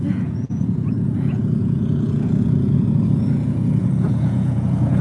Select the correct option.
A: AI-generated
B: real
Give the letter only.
A